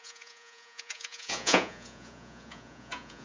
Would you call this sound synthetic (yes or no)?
yes